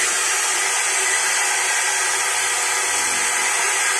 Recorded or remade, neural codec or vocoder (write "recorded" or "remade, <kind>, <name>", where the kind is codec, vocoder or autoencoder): recorded